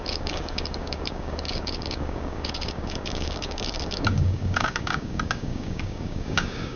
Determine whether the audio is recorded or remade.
remade